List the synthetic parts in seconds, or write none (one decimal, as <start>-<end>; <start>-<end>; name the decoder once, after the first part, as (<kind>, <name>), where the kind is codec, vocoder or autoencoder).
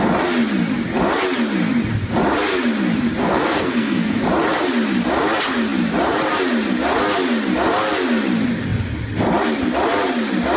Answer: 3.2-4.2 (codec, SNAC)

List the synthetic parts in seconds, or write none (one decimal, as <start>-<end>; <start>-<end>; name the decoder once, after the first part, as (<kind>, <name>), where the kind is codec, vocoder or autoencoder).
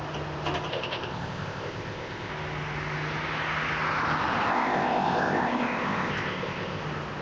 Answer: 0.7-2.3 (codec, ZipCodec); 4.5-6.8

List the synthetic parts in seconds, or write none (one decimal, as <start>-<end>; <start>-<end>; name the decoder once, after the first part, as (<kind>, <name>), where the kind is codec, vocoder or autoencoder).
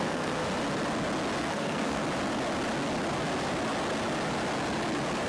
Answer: 0.0-0.4 (codec, SNAC); 1.4-2.0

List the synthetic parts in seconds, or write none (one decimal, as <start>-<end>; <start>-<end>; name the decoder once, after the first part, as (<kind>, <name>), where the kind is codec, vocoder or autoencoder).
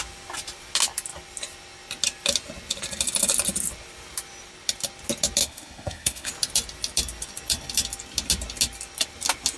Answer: 5.4-6.3 (autoencoder, DAC-VAE)